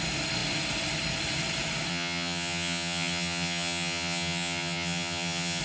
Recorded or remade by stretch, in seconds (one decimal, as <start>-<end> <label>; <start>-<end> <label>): 0.0-1.9 recorded; 1.9-5.6 remade